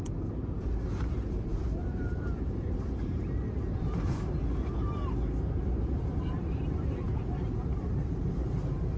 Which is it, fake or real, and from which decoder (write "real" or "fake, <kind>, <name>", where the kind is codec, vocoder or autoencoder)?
fake, vocoder, BigVGAN v2